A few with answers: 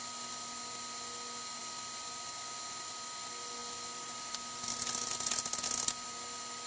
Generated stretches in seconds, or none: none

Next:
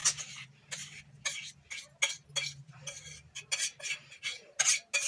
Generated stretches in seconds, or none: none

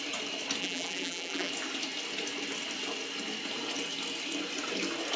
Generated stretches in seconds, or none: 0.6-1.5 (vocoder, BigVGAN v2)